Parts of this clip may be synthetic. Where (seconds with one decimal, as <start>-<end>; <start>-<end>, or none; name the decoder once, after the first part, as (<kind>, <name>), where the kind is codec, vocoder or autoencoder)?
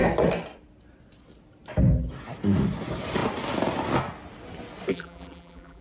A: 4.9-5.8 (vocoder, BigVGAN v2)